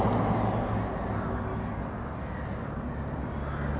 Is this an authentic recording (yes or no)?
yes